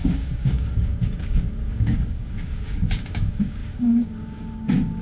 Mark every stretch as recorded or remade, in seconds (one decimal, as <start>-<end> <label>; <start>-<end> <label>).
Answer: 0.0-5.0 remade